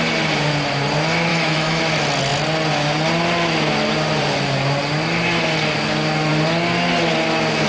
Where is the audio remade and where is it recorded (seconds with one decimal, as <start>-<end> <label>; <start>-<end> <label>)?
0.0-1.3 recorded; 1.3-1.8 remade; 1.8-7.7 recorded